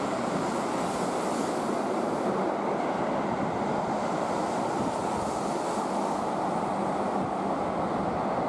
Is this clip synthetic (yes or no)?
no